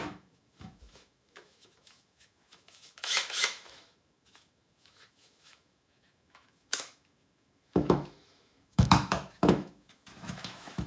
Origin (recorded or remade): remade